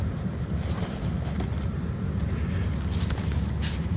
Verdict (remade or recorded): recorded